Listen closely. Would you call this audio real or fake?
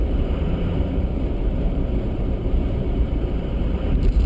fake